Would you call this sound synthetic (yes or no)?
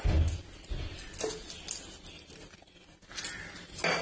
no